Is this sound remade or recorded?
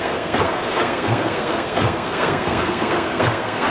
remade